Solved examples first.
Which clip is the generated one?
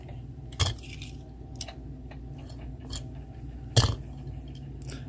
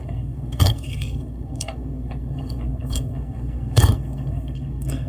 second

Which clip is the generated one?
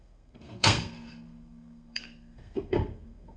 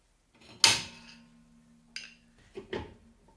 first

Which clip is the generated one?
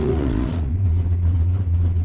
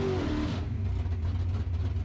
first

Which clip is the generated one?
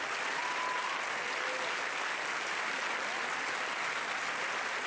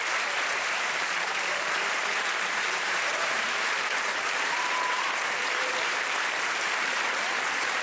second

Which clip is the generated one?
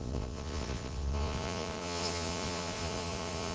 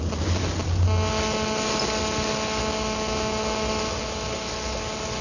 first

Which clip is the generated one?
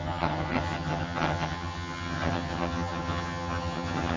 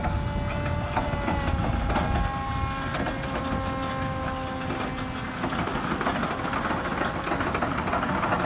first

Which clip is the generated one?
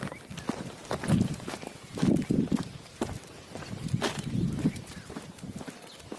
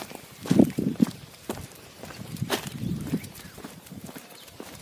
second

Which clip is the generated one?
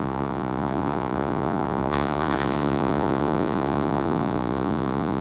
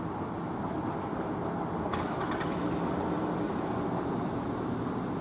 first